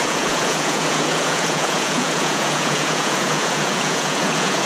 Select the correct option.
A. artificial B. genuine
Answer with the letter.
A